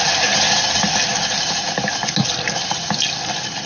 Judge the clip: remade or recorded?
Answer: recorded